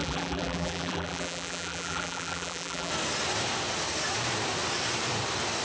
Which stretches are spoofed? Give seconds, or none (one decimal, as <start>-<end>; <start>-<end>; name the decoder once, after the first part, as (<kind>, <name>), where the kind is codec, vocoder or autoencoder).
0.0-2.9 (vocoder, BigVGAN v2)